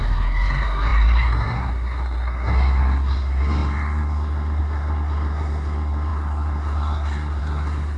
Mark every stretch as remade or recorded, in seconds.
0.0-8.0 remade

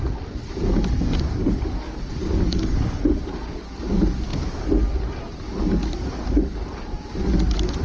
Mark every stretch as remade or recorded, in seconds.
0.0-2.2 recorded; 2.2-3.0 remade; 3.0-7.8 recorded